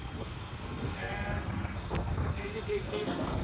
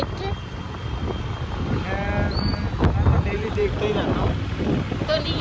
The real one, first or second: second